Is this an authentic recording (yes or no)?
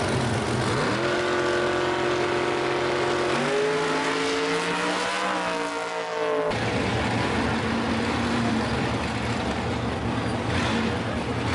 yes